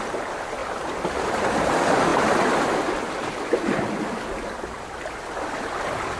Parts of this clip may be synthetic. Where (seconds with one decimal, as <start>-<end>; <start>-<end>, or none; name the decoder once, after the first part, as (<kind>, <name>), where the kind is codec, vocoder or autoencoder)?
none